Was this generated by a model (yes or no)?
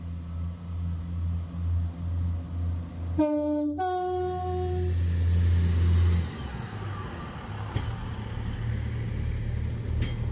no